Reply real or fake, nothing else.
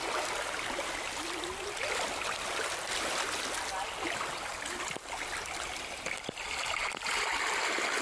real